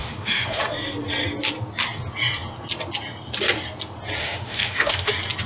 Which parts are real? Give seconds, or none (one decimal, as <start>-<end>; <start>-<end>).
0.6-4.2; 5.1-5.5